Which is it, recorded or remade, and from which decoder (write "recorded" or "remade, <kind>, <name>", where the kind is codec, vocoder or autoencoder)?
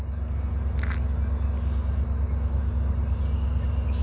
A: recorded